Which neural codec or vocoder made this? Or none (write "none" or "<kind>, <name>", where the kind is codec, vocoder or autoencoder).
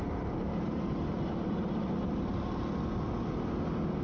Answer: none